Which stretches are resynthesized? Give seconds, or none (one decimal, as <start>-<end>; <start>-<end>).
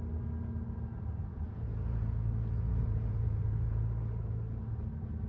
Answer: 1.3-2.3; 2.7-3.8